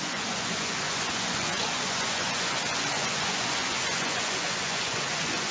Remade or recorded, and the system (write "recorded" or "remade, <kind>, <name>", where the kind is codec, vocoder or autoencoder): remade, vocoder, Vocos